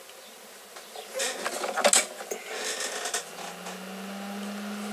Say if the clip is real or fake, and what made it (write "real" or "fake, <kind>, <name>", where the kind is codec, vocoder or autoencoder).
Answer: real